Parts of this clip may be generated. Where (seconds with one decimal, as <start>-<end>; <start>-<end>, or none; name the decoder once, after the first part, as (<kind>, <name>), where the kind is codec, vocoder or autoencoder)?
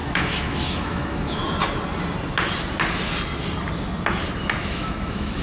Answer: 0.0-1.4 (autoencoder, DAC-VAE); 4.6-5.4